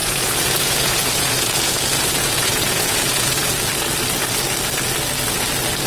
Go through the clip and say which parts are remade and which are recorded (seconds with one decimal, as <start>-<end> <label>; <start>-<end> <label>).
0.0-3.5 remade; 3.5-5.9 recorded